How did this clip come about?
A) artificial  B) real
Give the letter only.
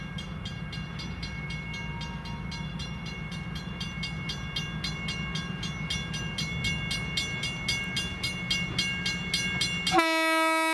B